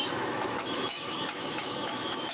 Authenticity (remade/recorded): remade